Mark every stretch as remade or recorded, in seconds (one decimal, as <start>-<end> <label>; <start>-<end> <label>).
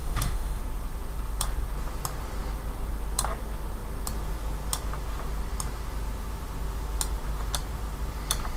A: 0.0-0.6 remade; 0.6-8.6 recorded